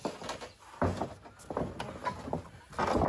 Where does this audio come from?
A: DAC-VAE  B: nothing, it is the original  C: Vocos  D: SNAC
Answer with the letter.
B